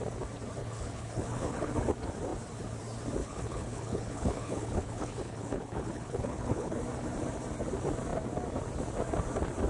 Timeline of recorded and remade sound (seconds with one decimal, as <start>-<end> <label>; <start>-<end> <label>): 0.0-0.6 recorded; 0.6-1.7 remade; 1.7-3.2 recorded; 3.2-6.8 remade; 6.8-9.7 recorded